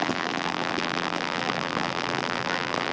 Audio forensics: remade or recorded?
remade